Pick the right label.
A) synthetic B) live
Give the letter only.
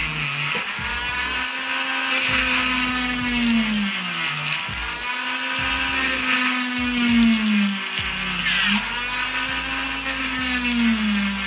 B